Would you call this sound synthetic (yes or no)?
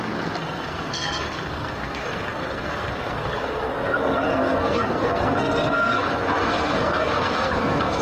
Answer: yes